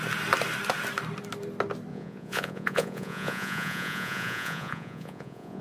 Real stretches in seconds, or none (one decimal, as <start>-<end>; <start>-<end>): 0.0-1.9